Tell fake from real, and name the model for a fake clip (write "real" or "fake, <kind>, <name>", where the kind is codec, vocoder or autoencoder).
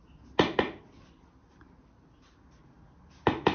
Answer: real